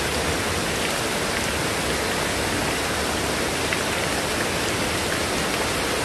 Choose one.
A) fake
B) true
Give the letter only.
B